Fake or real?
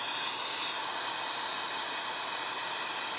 real